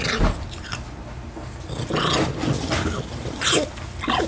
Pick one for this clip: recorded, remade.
recorded